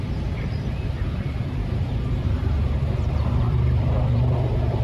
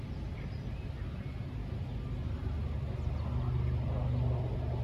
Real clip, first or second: second